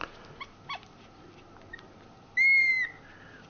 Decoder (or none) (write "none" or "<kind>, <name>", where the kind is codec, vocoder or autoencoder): none